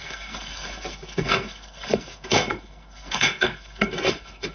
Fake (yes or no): yes